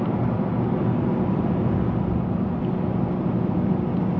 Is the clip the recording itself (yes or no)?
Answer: yes